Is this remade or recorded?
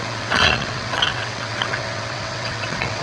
remade